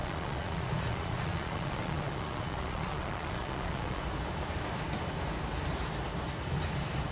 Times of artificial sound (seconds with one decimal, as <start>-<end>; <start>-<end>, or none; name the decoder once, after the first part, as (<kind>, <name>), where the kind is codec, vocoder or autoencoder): 0.0-4.0 (vocoder, Vocos)